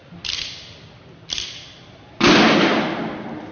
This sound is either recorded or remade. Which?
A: recorded